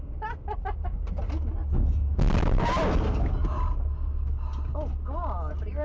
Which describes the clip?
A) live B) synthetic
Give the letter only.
A